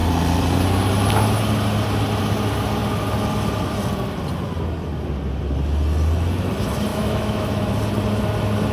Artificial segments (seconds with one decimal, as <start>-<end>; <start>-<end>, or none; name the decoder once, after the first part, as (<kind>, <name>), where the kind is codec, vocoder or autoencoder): 6.9-7.8 (autoencoder, DAC-VAE)